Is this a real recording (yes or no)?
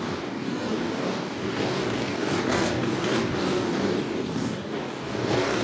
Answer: no